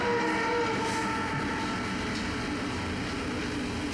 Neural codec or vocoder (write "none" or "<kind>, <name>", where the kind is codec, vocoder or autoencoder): none